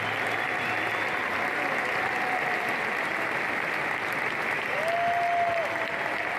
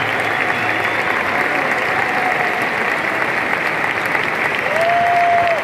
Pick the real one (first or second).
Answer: first